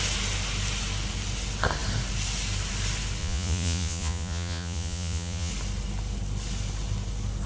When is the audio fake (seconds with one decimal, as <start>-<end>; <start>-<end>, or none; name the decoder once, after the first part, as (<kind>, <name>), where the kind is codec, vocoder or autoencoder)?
3.2-5.5 (vocoder, Vocos)